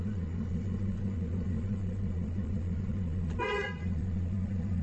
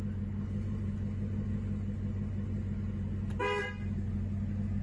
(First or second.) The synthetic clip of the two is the first